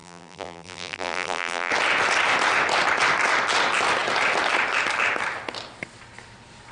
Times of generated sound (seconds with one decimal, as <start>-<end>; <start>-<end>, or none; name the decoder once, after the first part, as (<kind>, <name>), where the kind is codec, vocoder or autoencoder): 0.0-1.7 (vocoder, BigVGAN v2)